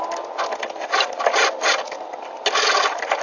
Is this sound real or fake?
real